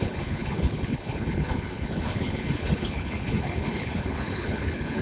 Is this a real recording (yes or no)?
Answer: no